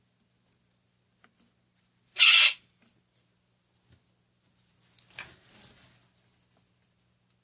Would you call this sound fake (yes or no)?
no